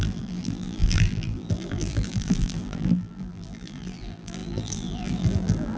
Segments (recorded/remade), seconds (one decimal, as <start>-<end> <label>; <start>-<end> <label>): 0.0-5.8 remade